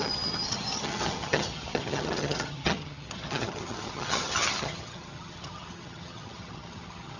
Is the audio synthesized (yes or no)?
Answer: yes